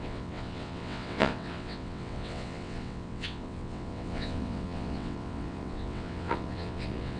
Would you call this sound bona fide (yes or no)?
no